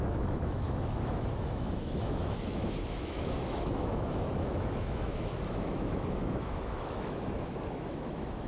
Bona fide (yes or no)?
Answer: no